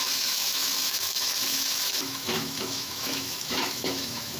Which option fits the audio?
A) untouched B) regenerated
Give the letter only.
B